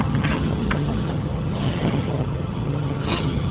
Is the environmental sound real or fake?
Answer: fake